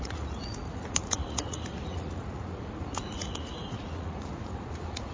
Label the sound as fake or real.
fake